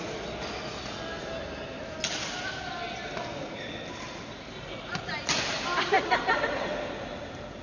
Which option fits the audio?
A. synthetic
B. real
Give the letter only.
B